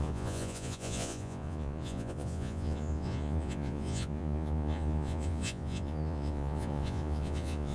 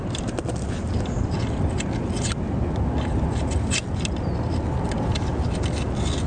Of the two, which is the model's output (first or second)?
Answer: first